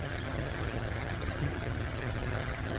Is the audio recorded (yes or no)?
no